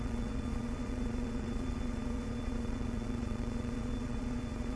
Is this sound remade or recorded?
remade